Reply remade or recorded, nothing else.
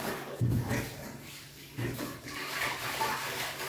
remade